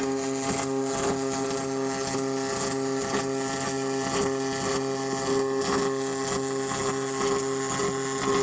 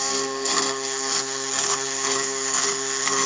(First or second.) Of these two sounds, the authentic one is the first